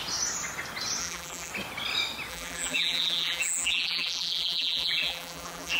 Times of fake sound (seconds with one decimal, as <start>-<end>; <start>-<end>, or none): 1.0-1.5; 2.3-5.8